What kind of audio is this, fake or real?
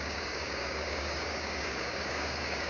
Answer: fake